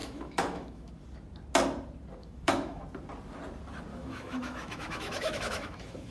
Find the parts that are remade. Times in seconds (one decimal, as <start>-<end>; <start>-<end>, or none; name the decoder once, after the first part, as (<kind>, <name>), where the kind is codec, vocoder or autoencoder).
0.0-0.9 (autoencoder, DAC-VAE); 2.2-2.8; 3.9-6.1